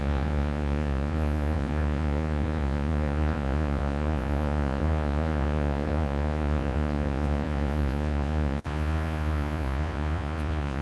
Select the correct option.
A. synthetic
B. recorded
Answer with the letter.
A